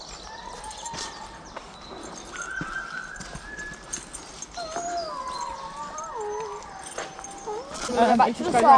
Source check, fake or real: real